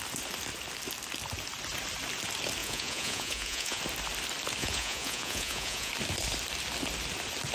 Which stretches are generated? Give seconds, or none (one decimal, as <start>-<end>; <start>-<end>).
2.6-3.8; 4.6-5.9